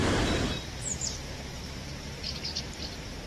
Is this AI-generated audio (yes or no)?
yes